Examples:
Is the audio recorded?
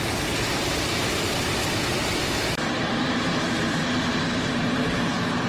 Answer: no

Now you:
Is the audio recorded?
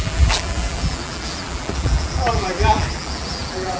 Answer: no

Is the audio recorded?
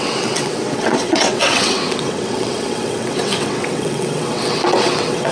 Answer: no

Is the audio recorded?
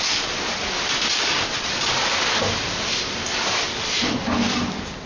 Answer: no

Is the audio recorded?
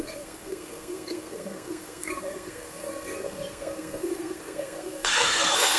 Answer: no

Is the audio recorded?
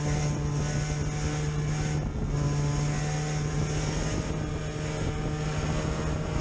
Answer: yes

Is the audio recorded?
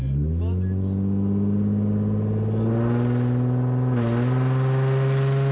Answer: yes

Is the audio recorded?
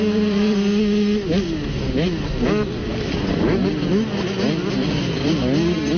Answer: yes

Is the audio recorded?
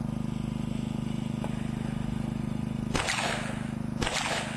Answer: yes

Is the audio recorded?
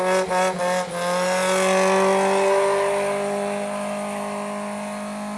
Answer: yes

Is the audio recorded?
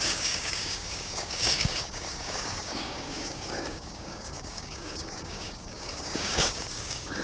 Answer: no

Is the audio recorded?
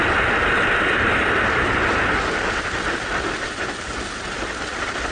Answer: yes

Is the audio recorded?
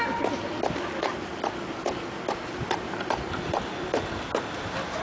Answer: yes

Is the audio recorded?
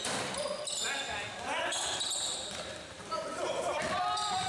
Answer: yes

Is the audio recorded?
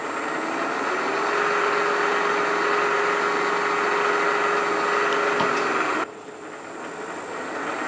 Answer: yes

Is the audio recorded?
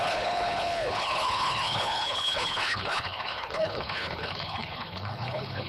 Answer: no